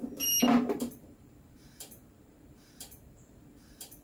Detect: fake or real fake